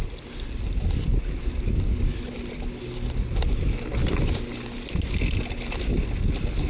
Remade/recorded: recorded